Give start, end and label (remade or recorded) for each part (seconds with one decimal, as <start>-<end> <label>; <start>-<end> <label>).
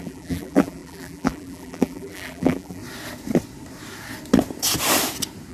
0.0-2.8 remade; 2.8-5.5 recorded